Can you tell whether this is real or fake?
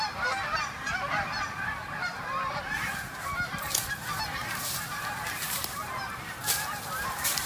fake